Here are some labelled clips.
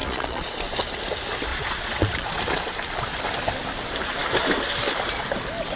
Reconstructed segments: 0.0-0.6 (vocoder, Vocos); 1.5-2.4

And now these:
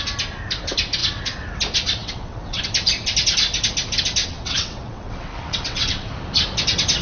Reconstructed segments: 2.0-2.6 (vocoder, WaveNeXt); 4.2-6.1

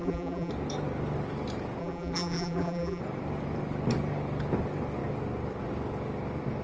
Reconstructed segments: 0.0-0.5 (vocoder, BigVGAN v2); 1.8-3.0

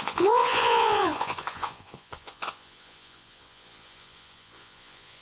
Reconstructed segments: 0.0-5.2 (vocoder, Vocos)

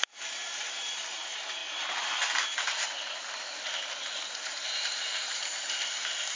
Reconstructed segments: 0.0-1.6 (vocoder, BigVGAN v2); 4.3-6.4

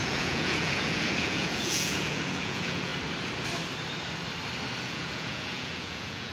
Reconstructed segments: 0.0-2.9 (vocoder, Vocos); 4.8-6.3

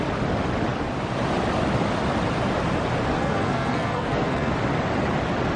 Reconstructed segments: 3.2-4.5 (codec, SNAC)

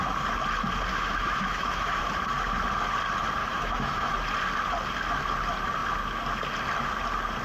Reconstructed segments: 0.9-2.0 (autoencoder, DAC-VAE); 3.4-4.1